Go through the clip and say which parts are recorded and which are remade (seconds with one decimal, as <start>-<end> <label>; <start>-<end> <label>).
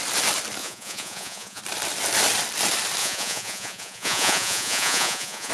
0.0-0.6 recorded; 0.6-1.6 remade; 1.6-3.0 recorded; 3.0-5.5 remade